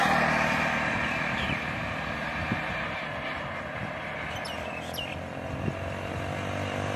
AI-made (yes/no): no